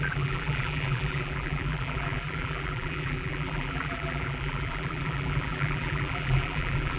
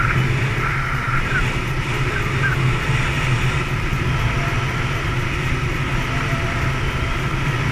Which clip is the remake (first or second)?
first